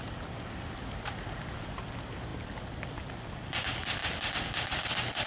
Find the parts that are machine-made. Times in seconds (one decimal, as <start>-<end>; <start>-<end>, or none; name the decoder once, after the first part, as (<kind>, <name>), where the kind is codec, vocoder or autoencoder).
none